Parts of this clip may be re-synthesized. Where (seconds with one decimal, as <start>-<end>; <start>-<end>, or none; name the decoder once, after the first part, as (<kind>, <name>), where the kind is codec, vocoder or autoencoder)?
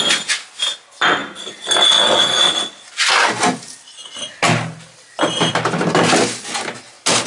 none